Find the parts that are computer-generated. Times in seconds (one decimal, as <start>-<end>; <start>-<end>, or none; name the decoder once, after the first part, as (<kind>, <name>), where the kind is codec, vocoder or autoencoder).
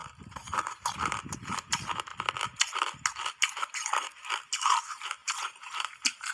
0.0-0.6 (vocoder, BigVGAN v2); 5.2-6.3